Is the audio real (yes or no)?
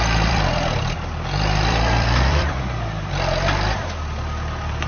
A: no